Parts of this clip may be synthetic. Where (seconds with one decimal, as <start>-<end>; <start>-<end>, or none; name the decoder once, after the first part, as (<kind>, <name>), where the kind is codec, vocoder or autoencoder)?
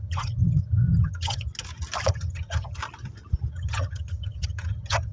0.0-1.5 (vocoder, HiFi-GAN); 2.1-2.8; 3.5-5.1